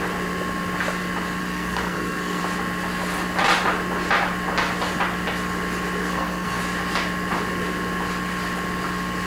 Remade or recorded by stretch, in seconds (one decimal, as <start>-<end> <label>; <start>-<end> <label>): 0.0-1.4 recorded; 1.4-2.4 remade; 2.4-6.0 recorded; 6.0-6.6 remade; 6.6-9.3 recorded